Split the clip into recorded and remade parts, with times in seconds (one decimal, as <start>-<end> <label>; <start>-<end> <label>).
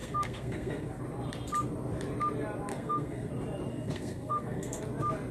0.0-1.0 remade; 1.0-2.7 recorded; 2.7-3.3 remade; 3.3-3.7 recorded; 3.7-4.8 remade; 4.8-5.3 recorded